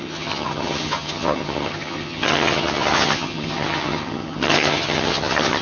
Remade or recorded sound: remade